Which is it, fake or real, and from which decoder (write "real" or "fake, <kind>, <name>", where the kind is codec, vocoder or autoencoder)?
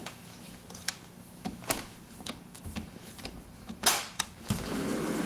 fake, autoencoder, DAC-VAE